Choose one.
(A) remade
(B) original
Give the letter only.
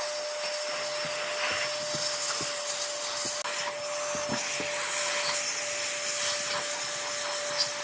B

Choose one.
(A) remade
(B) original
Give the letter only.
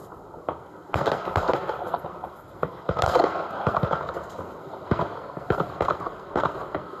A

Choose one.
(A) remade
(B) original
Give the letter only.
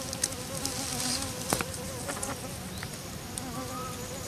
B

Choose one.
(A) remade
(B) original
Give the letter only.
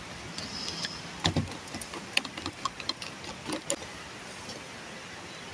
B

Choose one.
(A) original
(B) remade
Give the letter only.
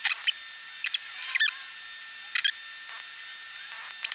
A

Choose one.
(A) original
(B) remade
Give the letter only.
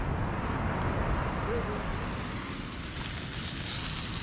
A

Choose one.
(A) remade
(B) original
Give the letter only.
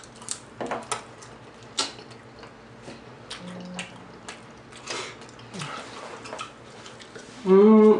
B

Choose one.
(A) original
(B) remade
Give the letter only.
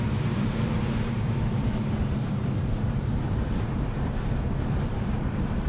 B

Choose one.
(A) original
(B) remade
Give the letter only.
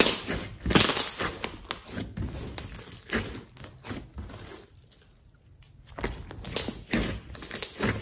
A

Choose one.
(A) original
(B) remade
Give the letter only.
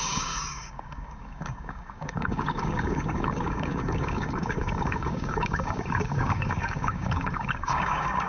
B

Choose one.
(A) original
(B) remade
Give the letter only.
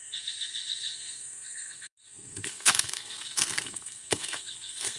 B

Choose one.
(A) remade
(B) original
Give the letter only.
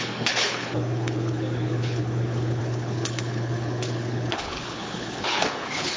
A